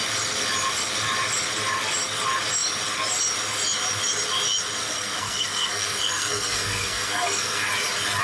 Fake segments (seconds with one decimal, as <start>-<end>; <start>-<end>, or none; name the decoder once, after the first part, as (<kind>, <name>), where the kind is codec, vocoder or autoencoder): 4.8-7.7 (codec, SNAC)